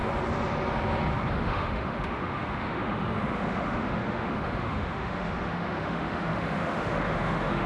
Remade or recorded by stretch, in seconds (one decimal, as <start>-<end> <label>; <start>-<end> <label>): 0.0-1.3 recorded; 1.3-7.7 remade